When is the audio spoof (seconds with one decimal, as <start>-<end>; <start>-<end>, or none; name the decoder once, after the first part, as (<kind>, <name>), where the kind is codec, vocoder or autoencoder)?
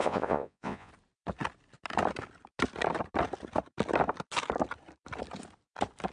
0.0-0.9 (vocoder, Vocos)